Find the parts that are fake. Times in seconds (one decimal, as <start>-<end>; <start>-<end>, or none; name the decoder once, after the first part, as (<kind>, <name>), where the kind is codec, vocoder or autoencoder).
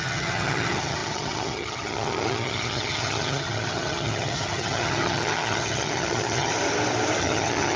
0.0-6.5 (vocoder, HiFi-GAN); 7.2-7.8